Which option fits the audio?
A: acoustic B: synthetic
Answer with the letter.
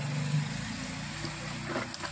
A